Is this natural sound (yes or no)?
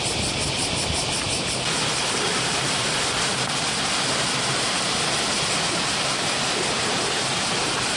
yes